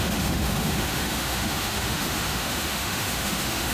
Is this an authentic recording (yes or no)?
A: no